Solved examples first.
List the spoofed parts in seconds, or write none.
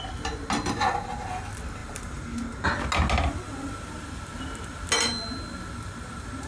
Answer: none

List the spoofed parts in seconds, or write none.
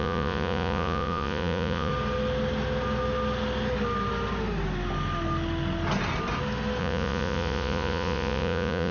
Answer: 0.0-1.9 (vocoder, Vocos); 6.8-8.9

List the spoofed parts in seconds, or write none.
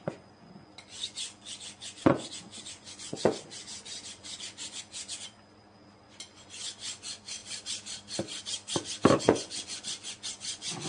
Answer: 0.0-7.4 (vocoder, Vocos); 9.2-10.9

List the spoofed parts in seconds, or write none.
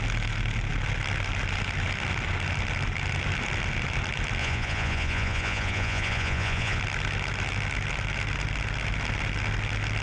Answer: 4.4-6.8 (vocoder, Vocos)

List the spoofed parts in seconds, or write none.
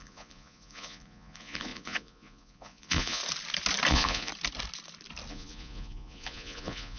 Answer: 0.0-3.2 (vocoder, Vocos); 3.9-4.3; 5.3-7.0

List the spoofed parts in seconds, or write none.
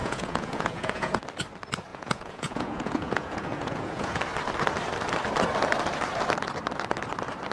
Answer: 0.0-1.2 (vocoder, Vocos); 1.9-4.2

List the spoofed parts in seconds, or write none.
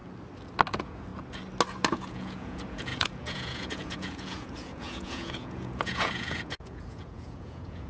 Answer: 0.7-1.1 (vocoder, Vocos); 1.9-7.9